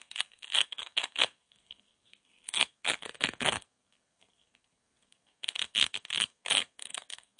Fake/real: fake